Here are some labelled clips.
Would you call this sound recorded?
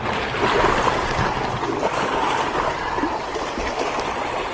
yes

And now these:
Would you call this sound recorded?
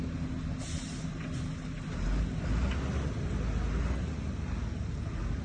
yes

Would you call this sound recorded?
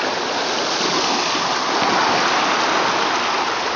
yes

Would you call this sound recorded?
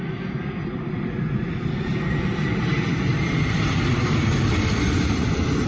no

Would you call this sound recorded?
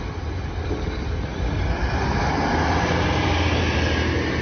yes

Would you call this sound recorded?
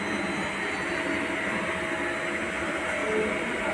yes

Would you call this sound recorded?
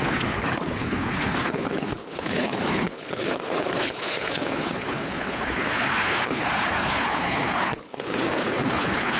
no